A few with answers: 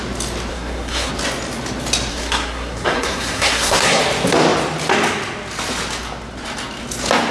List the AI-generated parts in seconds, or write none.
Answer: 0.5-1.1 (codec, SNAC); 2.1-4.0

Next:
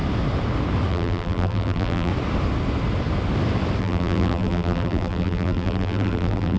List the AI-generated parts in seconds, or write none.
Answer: 0.9-2.1 (vocoder, BigVGAN v2); 3.8-6.6

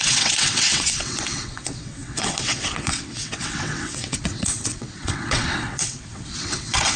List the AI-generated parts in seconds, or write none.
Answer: 0.0-7.0 (vocoder, WaveNeXt)

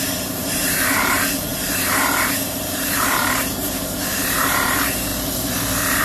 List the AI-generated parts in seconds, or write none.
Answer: 0.0-5.1 (vocoder, BigVGAN v2)